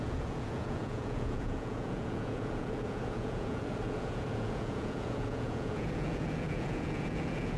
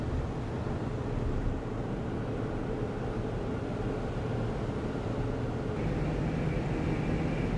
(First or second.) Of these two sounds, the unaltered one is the second